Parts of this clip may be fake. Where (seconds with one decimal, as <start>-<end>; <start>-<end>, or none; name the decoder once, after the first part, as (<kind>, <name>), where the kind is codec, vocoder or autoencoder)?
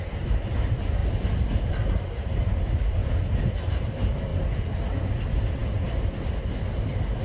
0.0-1.0 (vocoder, BigVGAN v2); 1.9-3.0; 3.7-4.3; 5.1-7.2